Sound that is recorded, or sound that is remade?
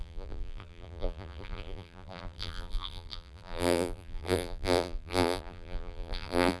remade